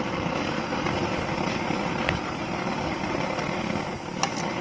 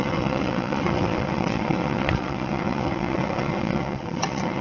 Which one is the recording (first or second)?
first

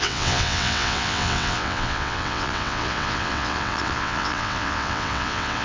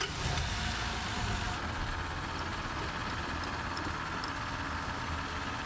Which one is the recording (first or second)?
second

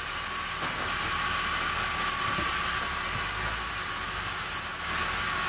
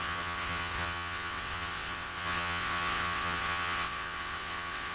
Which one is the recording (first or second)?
first